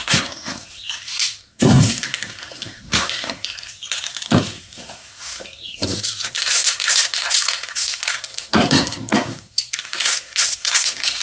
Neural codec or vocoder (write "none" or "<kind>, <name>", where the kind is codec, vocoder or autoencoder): codec, SNAC